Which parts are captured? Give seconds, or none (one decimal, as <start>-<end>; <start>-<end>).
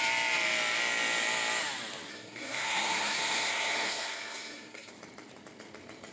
0.0-2.1; 4.9-6.1